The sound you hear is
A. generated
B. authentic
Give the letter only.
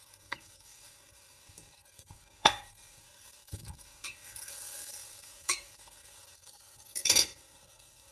A